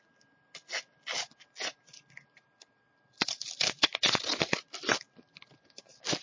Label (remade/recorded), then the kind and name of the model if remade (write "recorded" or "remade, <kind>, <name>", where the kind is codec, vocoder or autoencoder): recorded